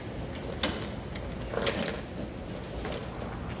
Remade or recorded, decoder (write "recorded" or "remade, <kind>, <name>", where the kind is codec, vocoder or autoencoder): recorded